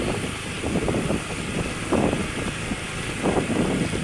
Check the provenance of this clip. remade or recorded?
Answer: recorded